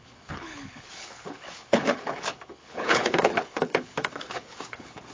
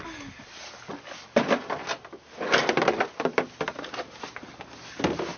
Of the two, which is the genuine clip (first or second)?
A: second